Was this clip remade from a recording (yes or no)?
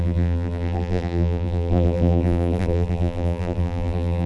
yes